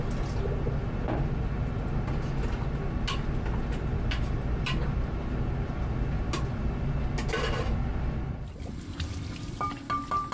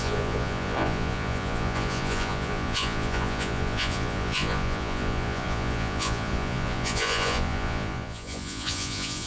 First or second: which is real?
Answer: first